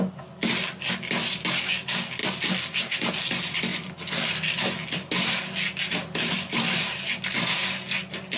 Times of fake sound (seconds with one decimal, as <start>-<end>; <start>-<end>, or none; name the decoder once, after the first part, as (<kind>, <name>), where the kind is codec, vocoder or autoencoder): none